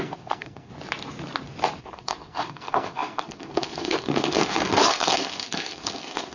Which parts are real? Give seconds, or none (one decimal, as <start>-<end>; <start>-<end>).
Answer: 0.7-1.8